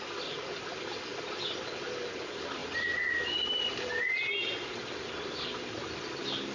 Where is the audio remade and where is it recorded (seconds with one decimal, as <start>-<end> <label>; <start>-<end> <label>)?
0.0-6.5 recorded